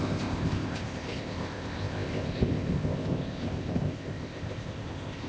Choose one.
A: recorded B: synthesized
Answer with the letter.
B